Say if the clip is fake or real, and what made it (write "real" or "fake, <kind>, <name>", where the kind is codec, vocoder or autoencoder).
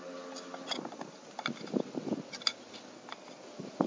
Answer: real